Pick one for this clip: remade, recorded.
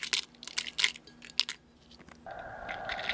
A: recorded